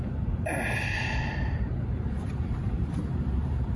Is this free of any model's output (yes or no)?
no